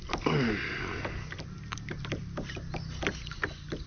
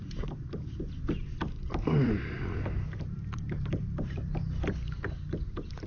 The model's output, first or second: second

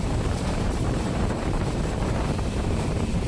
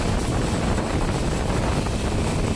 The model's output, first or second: first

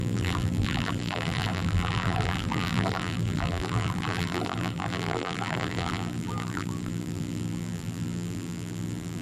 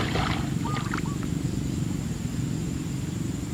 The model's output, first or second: first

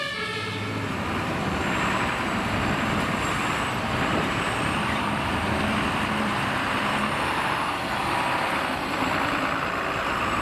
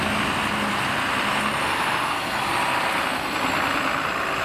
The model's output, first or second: first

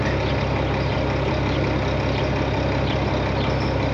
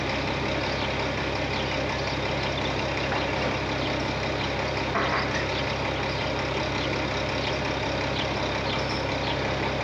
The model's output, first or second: first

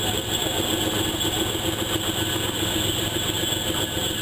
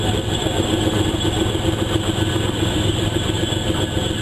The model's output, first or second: second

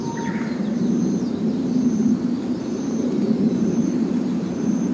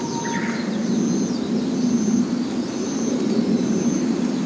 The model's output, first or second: first